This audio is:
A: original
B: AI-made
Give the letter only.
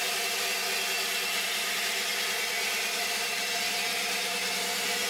A